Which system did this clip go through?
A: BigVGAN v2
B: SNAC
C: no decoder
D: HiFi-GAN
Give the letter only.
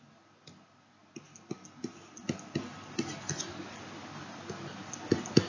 C